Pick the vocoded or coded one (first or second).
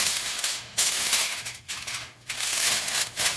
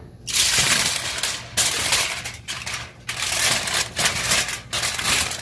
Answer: first